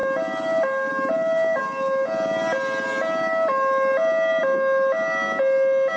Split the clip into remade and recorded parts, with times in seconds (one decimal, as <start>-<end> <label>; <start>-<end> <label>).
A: 0.0-6.0 recorded